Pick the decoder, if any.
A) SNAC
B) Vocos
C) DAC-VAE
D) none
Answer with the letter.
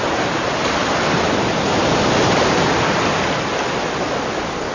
D